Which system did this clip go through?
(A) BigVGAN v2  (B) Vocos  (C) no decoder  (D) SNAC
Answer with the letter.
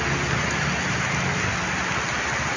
C